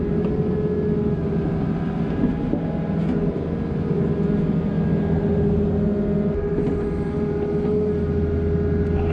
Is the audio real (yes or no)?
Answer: yes